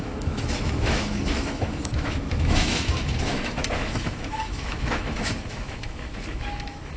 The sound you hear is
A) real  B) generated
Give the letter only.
B